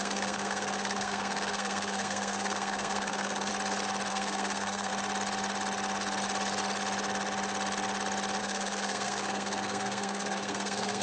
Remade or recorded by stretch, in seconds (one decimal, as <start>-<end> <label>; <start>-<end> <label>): 0.0-3.5 remade; 3.5-4.1 recorded; 4.1-4.9 remade; 4.9-8.4 recorded; 8.4-11.0 remade